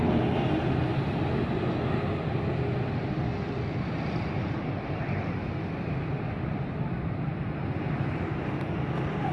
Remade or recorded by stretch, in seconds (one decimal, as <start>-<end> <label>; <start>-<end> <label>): 0.0-9.3 recorded